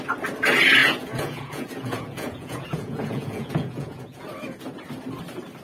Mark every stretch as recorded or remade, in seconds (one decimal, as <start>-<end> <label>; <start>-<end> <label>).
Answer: 0.0-0.8 recorded; 0.8-4.2 remade; 4.2-5.6 recorded